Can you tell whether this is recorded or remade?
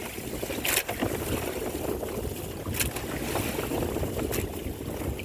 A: recorded